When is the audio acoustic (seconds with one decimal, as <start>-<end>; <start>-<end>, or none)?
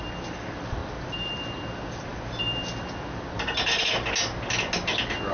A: 0.0-5.3